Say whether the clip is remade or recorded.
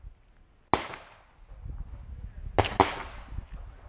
recorded